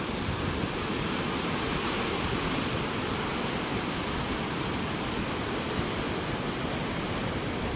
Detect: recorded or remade recorded